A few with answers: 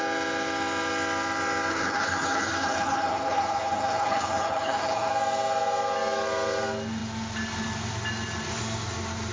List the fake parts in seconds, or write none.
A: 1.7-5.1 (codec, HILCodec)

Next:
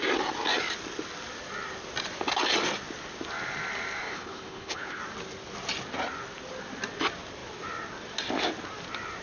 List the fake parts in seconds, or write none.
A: 4.0-5.0 (codec, HILCodec)

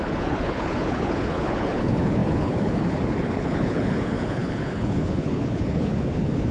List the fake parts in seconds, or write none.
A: 0.0-6.5 (codec, HILCodec)

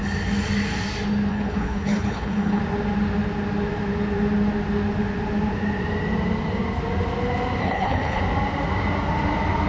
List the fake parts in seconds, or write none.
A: 1.3-2.6 (codec, HILCodec); 7.6-8.2

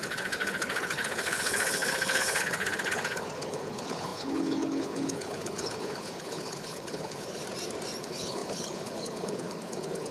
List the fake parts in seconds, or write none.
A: 0.0-7.4 (codec, HILCodec); 8.0-10.1

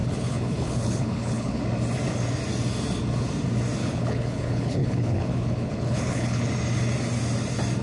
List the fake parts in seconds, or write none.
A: 0.0-1.6 (codec, HILCodec); 3.8-6.5